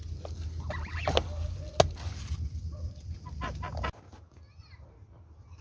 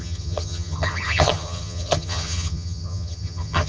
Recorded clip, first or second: first